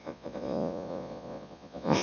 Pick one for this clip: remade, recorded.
remade